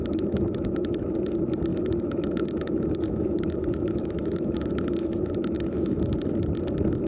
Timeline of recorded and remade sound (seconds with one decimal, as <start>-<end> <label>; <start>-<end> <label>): 0.0-1.0 remade; 1.0-1.7 recorded; 1.7-6.0 remade; 6.0-7.1 recorded